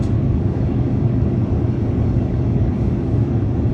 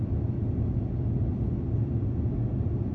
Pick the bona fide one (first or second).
second